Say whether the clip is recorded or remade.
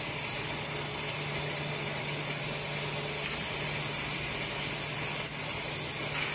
recorded